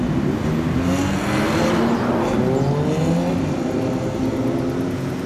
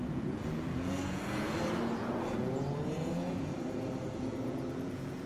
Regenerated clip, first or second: second